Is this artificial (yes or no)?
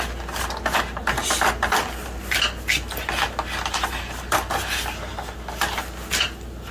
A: no